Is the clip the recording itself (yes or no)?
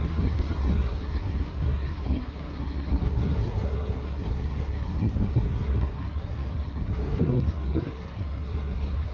no